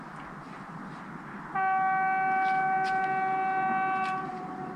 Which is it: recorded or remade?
recorded